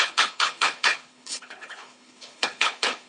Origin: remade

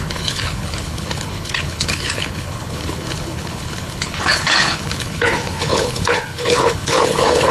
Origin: remade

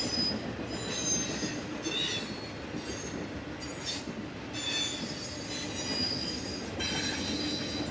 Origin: recorded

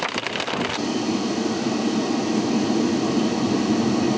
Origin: recorded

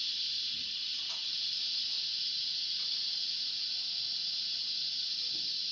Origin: recorded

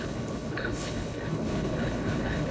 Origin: remade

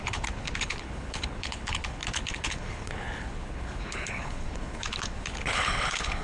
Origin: remade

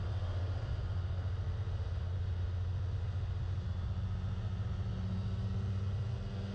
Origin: recorded